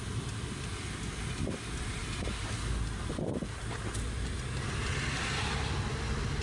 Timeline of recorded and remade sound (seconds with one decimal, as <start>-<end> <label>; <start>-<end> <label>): 0.0-6.4 recorded